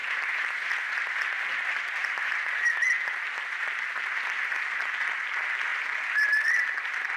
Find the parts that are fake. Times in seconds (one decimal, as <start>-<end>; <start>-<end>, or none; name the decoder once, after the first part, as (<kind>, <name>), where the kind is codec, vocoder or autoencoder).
none